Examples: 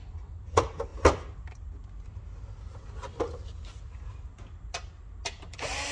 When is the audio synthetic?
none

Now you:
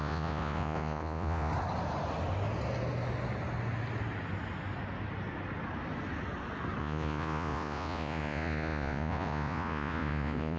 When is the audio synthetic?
0.0-1.5 (vocoder, Vocos); 6.8-10.6

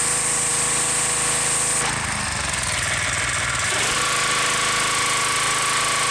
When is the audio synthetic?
none

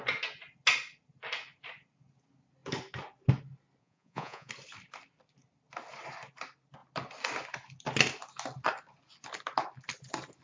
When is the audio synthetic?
3.8-4.5 (vocoder, Vocos)

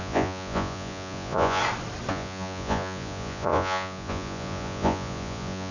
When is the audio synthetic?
0.0-1.6 (vocoder, Vocos); 2.1-5.7

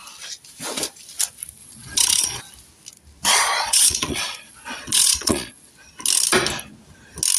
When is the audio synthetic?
1.6-2.4 (vocoder, Vocos); 3.3-5.7

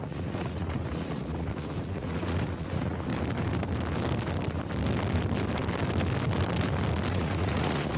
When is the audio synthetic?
0.0-3.1 (vocoder, Vocos); 7.1-8.0